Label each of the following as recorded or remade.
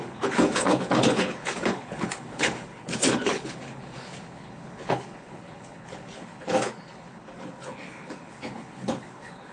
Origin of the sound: remade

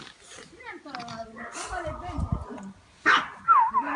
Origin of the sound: recorded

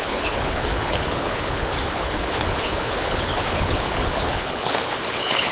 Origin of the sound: remade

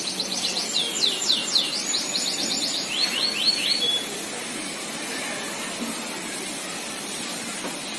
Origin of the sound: recorded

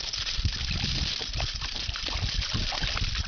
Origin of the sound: recorded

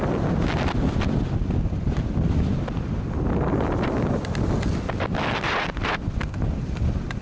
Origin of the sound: recorded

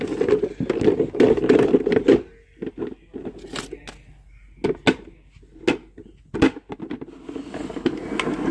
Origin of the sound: recorded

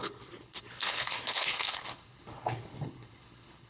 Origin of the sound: remade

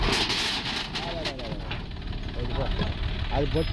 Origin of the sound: recorded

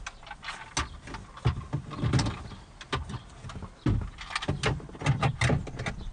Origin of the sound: recorded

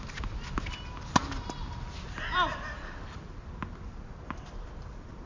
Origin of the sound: recorded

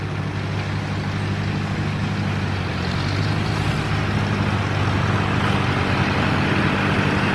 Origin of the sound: recorded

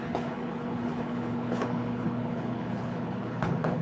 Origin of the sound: remade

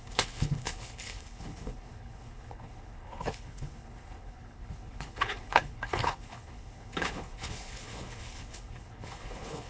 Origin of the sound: remade